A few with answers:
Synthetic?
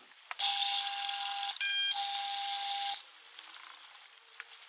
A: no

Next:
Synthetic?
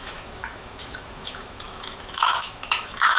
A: yes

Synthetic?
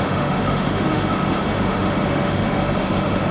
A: yes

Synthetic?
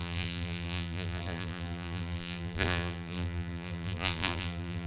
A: yes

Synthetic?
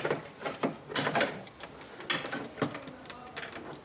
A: no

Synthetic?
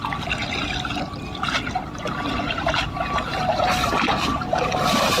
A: no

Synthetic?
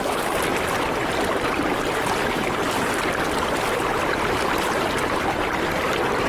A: no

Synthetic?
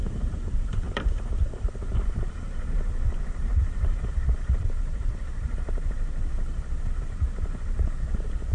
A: yes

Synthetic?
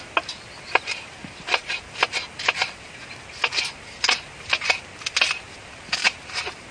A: no